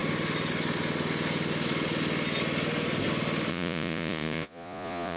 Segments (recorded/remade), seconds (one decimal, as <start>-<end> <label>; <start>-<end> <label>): 0.0-3.5 recorded; 3.5-5.2 remade